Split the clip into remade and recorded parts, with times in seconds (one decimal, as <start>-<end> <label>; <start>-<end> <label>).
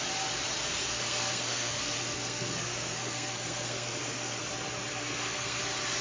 0.0-0.8 recorded; 0.8-4.4 remade; 4.4-4.9 recorded; 4.9-5.6 remade; 5.6-6.0 recorded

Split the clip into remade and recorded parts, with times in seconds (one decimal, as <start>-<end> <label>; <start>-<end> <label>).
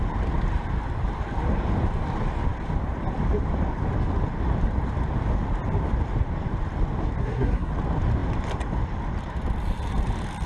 0.0-7.2 recorded; 7.2-7.7 remade; 7.7-10.5 recorded